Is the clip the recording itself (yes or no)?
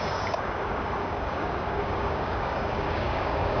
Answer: no